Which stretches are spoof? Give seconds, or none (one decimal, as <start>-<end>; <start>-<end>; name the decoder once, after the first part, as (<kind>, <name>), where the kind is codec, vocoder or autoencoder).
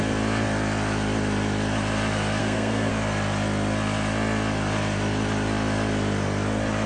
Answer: 2.4-2.9 (codec, SNAC)